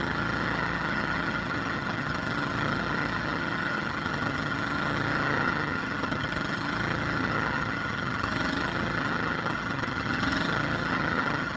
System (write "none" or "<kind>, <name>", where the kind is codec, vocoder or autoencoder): vocoder, HiFi-GAN